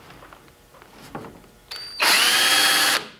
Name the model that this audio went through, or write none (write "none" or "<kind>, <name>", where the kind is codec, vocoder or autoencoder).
none